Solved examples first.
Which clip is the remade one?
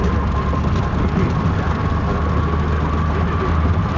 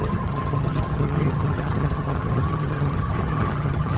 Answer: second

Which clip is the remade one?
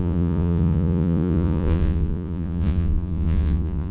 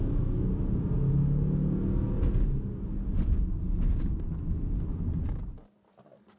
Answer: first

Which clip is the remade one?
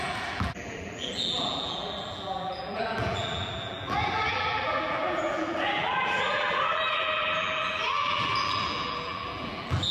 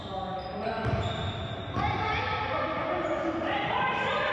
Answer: first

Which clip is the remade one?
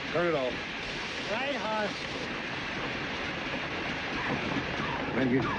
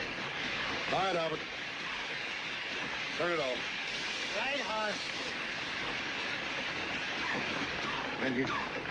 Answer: second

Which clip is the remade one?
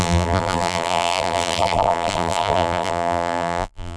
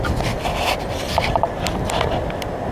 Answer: first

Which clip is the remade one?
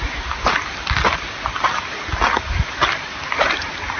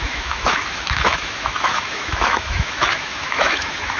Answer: second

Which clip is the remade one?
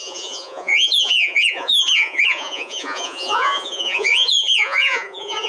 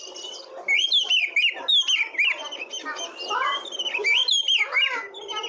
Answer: first